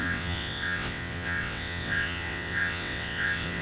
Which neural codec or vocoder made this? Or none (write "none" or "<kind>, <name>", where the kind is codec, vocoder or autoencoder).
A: vocoder, WaveNeXt